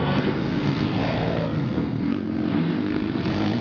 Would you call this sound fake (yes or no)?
yes